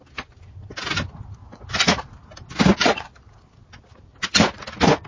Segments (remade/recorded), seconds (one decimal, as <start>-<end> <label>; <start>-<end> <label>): 0.0-1.4 recorded; 1.4-2.0 remade; 2.0-2.7 recorded; 2.7-3.2 remade; 3.2-4.1 recorded; 4.1-4.6 remade; 4.6-5.1 recorded